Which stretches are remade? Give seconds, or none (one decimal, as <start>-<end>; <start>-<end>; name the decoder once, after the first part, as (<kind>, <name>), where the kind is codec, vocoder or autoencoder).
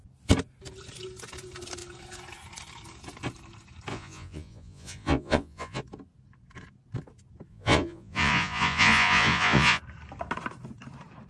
3.9-5.8 (vocoder, Vocos); 7.5-9.8